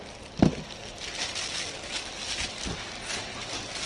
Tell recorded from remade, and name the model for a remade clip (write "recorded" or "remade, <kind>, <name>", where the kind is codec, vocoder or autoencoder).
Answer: recorded